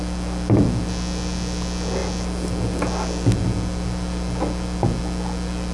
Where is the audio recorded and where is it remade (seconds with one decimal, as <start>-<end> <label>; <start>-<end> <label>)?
0.0-5.7 recorded